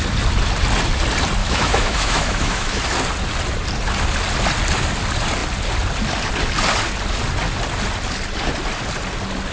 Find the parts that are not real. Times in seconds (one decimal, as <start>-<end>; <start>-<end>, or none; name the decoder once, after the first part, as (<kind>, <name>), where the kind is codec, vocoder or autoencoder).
1.4-2.8 (autoencoder, DAC-VAE)